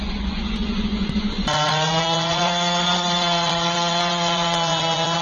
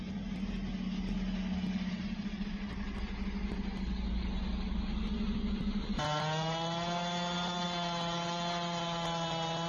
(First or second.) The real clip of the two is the second